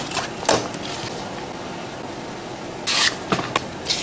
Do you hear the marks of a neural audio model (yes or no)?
no